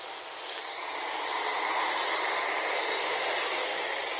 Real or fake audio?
real